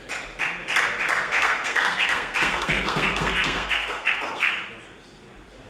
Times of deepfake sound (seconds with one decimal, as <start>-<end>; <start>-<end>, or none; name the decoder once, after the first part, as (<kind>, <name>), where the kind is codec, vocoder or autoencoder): 1.1-4.5 (codec, SNAC)